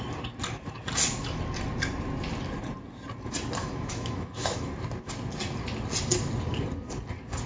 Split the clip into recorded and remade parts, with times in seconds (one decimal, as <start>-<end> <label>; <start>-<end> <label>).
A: 0.0-3.6 recorded; 3.6-4.7 remade; 4.7-7.5 recorded